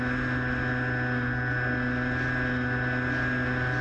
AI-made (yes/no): no